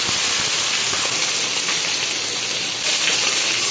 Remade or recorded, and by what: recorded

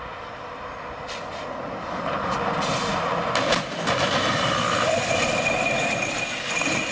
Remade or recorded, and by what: recorded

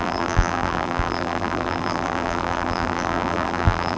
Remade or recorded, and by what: remade, vocoder, BigVGAN v2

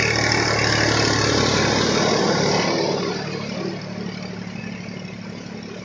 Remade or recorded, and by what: recorded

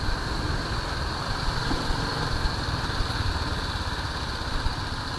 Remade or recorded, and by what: remade, vocoder, BigVGAN v2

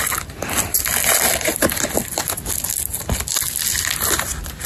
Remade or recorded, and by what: recorded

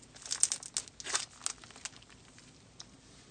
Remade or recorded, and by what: recorded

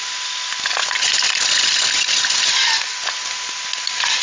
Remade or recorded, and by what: recorded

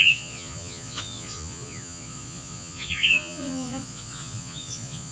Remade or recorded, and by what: remade, vocoder, Vocos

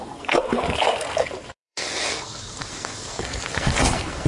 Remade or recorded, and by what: remade, codec, SNAC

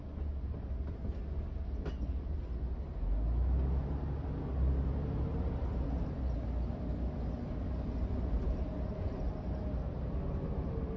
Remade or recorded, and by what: recorded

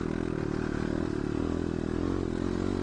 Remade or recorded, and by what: recorded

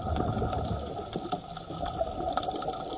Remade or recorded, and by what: recorded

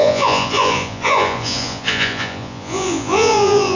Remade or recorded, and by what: remade, vocoder, Vocos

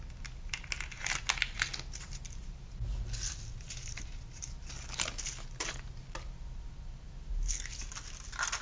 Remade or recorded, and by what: recorded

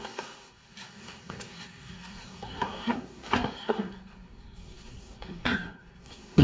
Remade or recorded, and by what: remade, codec, SNAC